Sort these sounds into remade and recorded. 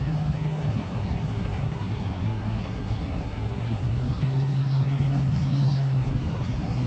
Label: remade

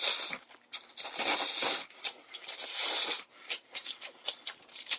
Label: recorded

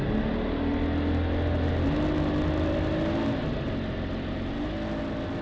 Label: recorded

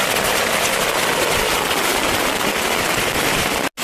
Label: recorded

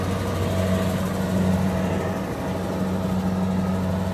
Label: recorded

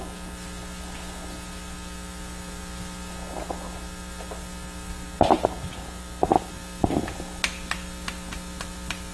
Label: recorded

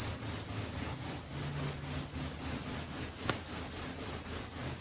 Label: recorded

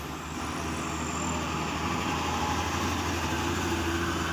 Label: recorded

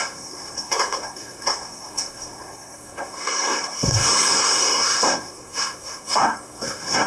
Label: remade